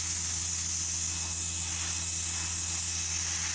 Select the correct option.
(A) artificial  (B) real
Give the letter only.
B